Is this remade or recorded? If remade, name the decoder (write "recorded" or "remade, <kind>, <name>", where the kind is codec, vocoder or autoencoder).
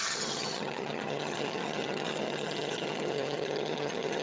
remade, vocoder, HiFi-GAN